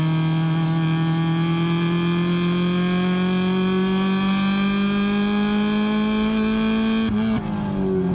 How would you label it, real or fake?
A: real